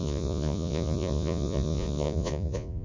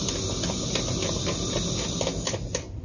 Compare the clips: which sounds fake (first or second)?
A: first